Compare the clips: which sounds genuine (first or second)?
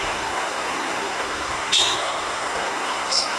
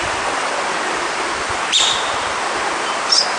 second